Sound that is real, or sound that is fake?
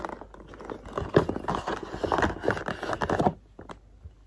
real